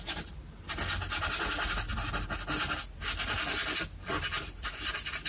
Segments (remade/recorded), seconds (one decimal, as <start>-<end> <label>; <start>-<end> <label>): 0.0-5.3 recorded